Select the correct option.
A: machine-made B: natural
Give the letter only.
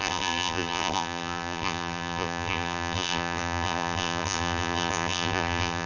A